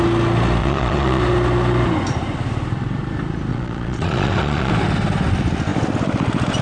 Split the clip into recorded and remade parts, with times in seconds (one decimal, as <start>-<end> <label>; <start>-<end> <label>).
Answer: 0.0-0.6 recorded; 0.6-1.2 remade; 1.2-3.5 recorded; 3.5-4.7 remade; 4.7-6.6 recorded